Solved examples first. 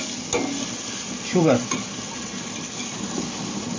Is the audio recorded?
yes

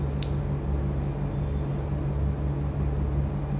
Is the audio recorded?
yes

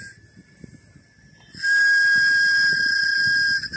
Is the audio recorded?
yes